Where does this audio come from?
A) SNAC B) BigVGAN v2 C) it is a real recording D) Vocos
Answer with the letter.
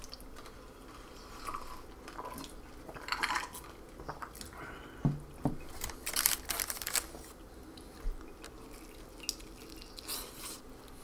C